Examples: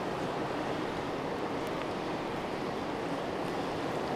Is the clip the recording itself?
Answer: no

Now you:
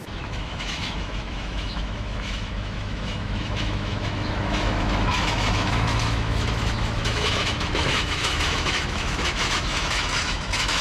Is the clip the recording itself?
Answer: no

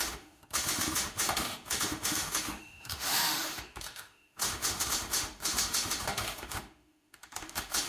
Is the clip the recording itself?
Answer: no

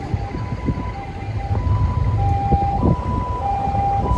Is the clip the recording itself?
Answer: yes